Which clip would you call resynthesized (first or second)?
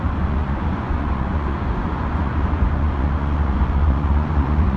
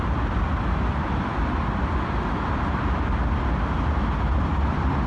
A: first